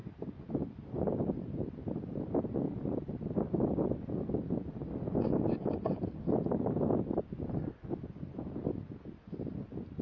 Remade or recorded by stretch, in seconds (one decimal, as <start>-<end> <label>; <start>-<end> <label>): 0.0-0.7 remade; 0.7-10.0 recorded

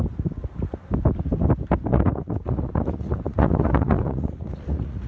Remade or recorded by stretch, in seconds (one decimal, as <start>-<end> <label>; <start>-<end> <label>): 0.0-1.9 recorded; 1.9-5.1 remade

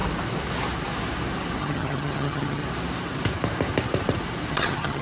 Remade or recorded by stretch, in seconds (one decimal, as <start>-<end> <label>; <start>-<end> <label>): 0.0-1.6 recorded; 1.6-2.6 remade; 2.6-4.5 recorded; 4.5-5.0 remade